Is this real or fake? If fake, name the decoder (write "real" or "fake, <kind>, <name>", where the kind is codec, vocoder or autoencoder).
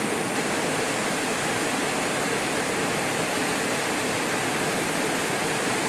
real